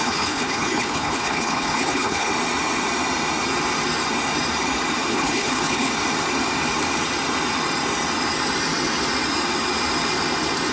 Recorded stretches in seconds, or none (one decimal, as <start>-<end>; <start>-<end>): 2.3-5.1; 5.9-10.7